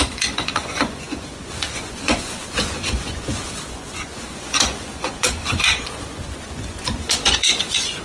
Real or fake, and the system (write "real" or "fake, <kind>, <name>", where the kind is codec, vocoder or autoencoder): fake, vocoder, Vocos